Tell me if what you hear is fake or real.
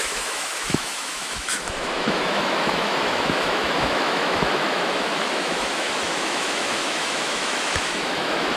fake